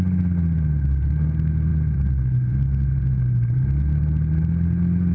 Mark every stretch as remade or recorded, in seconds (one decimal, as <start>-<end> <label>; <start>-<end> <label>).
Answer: 0.0-5.1 recorded